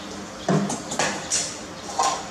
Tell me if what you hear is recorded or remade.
recorded